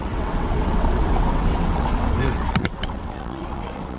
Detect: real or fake fake